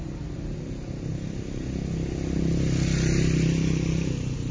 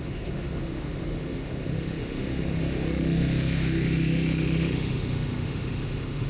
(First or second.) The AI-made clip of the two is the second